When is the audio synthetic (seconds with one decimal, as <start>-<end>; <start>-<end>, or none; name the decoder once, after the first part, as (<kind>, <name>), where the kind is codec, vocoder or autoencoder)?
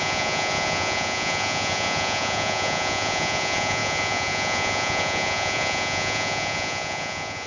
0.0-7.5 (vocoder, Vocos)